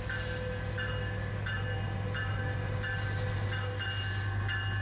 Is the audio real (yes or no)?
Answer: yes